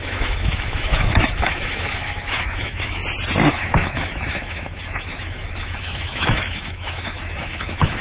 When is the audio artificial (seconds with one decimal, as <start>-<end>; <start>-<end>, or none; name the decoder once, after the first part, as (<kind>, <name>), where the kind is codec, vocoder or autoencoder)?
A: 0.0-3.0 (autoencoder, DAC-VAE); 3.5-8.0